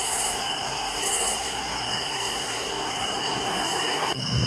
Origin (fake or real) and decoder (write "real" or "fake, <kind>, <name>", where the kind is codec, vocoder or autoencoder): fake, codec, SNAC